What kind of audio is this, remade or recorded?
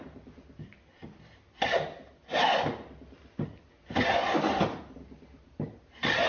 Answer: recorded